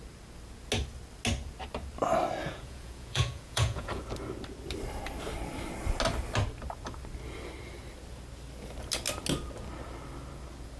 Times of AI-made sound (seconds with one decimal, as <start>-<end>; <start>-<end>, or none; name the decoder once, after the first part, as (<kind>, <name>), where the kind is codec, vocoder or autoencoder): 2.4-4.0 (vocoder, Vocos)